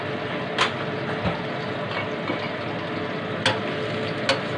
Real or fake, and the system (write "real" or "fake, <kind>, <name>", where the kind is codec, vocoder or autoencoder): real